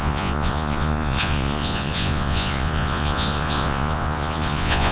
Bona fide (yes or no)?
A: no